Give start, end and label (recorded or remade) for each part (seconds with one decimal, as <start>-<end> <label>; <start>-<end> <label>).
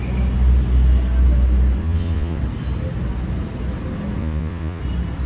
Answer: 0.0-1.8 recorded; 1.8-2.4 remade; 2.4-4.2 recorded; 4.2-4.8 remade; 4.8-5.3 recorded